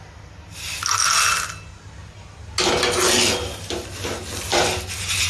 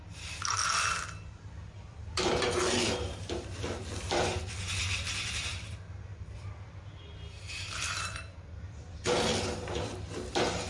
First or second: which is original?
first